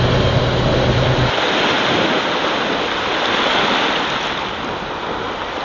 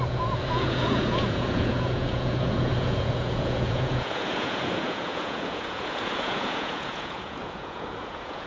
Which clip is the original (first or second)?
first